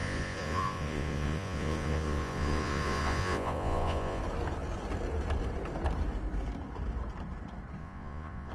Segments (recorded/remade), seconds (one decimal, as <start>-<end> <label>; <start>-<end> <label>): 0.0-4.2 remade; 4.2-7.8 recorded; 7.8-8.5 remade